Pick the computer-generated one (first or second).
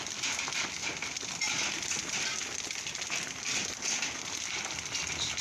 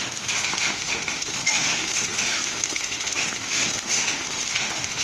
second